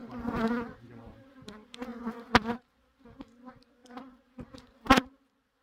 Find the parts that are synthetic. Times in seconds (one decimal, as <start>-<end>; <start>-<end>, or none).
0.0-0.5; 3.8-5.1